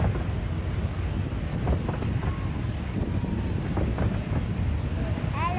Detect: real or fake real